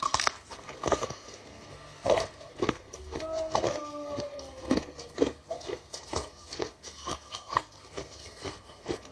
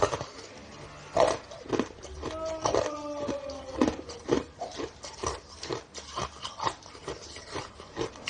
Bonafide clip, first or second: second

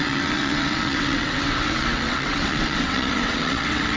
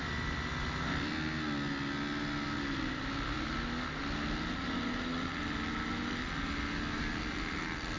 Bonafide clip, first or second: second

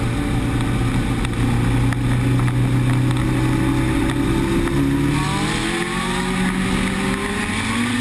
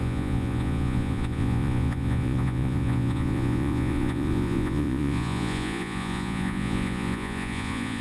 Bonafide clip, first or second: first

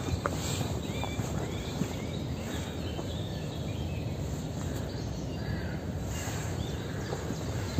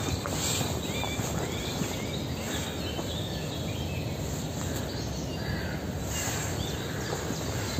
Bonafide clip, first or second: second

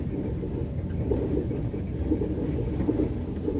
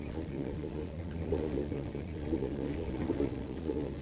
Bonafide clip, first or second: first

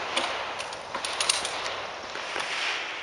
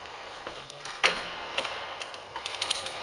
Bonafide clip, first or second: first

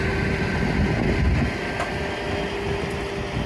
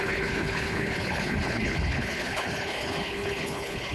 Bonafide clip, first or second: first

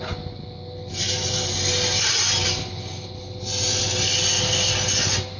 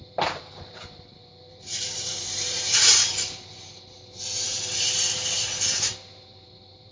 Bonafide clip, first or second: first